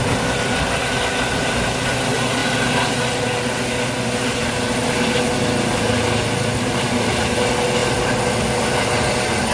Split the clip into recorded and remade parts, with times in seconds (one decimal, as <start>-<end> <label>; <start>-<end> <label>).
0.0-9.5 recorded